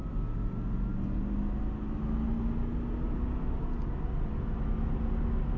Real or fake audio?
real